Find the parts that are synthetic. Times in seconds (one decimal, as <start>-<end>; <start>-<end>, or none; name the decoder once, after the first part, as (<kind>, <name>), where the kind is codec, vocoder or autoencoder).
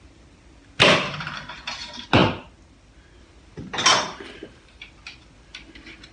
3.9-4.8 (vocoder, BigVGAN v2)